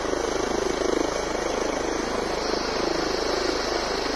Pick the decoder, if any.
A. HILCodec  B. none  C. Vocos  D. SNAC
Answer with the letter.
B